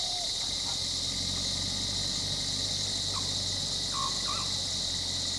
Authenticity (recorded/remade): recorded